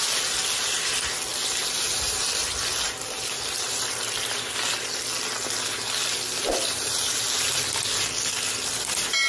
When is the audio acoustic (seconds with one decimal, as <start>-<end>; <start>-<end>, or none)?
0.0-9.3